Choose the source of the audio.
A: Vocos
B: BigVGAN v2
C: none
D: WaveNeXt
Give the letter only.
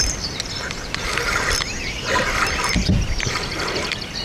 B